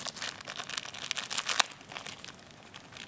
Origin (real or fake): real